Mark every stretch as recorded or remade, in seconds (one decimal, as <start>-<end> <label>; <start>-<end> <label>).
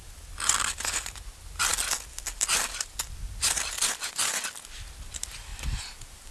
0.0-6.3 recorded